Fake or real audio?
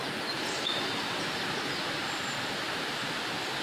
real